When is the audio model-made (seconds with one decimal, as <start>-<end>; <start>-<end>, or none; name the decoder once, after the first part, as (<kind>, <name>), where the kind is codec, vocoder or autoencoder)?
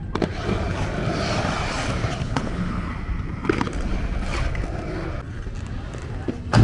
2.2-2.9 (codec, HILCodec)